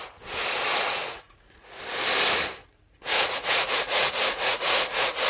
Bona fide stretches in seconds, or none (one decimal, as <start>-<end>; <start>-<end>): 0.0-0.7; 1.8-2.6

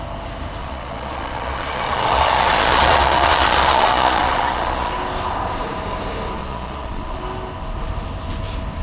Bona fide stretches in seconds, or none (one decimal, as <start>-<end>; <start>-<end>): 0.0-0.6; 4.9-6.4; 7.2-8.8

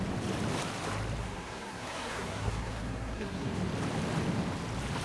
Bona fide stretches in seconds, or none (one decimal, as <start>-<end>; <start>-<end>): 0.0-1.2; 3.5-5.0

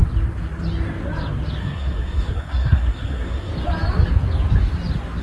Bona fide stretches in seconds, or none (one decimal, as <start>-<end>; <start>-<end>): 0.0-1.6; 3.5-5.2

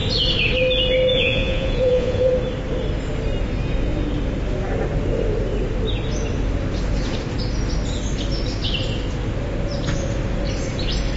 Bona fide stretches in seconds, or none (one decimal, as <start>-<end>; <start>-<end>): 0.0-1.1; 2.3-11.2